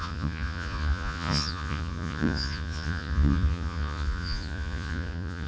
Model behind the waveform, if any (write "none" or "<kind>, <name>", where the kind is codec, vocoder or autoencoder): vocoder, Vocos